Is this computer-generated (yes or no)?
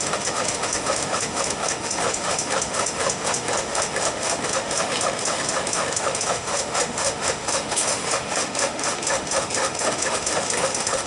yes